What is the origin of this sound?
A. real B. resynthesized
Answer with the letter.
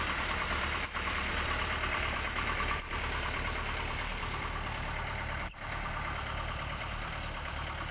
B